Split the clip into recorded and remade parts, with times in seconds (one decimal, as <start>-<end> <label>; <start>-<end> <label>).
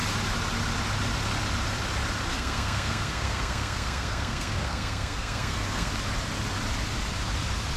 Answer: 0.0-2.3 recorded; 2.3-5.9 remade; 5.9-7.8 recorded